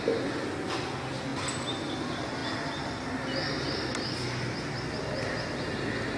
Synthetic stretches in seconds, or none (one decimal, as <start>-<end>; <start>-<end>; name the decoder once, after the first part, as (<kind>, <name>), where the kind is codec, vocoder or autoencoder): none